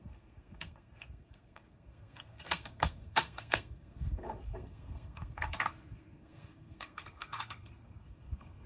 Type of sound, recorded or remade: remade